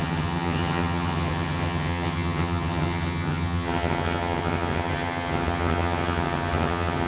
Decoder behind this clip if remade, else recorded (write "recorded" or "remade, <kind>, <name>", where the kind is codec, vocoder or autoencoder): remade, vocoder, HiFi-GAN